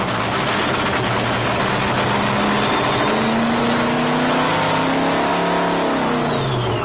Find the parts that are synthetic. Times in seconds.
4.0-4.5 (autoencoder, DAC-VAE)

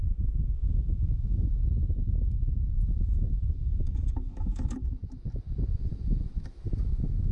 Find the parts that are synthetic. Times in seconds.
0.0-1.6 (autoencoder, DAC-VAE); 2.8-5.0; 5.8-7.3

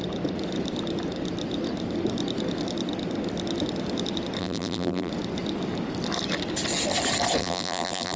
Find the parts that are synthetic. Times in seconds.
4.4-5.1 (vocoder, BigVGAN v2); 7.4-8.2

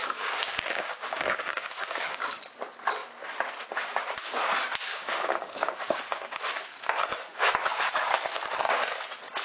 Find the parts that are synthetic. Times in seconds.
0.0-2.4 (codec, DAC); 4.9-6.4

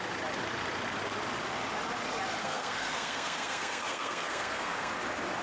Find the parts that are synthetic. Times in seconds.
2.4-4.9 (codec, SNAC)